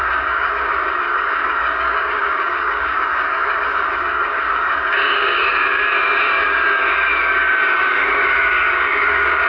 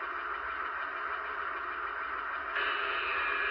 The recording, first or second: second